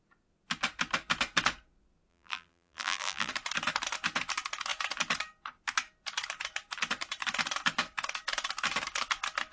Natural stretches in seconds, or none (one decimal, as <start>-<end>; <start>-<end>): 0.0-2.1; 3.3-9.5